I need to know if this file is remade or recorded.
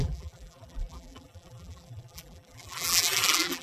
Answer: remade